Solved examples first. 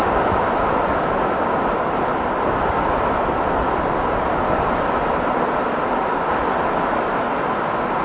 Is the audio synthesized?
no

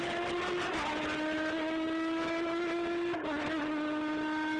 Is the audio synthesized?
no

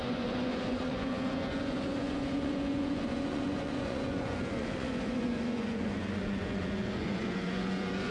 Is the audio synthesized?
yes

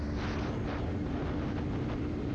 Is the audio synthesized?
no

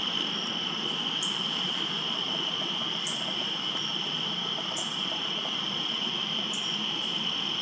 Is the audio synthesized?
yes